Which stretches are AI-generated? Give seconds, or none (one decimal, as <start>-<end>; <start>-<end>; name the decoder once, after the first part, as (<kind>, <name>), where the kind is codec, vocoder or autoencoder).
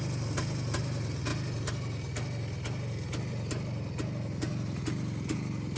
none